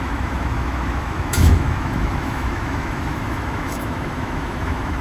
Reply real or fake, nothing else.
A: fake